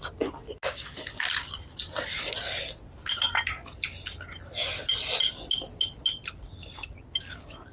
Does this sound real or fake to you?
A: real